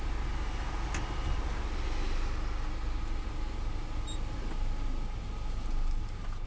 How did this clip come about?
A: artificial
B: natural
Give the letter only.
B